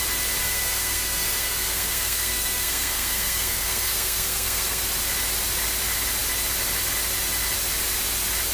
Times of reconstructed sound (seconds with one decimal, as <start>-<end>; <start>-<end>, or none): 0.4-4.8